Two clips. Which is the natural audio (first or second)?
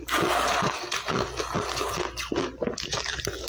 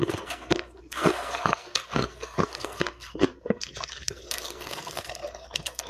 first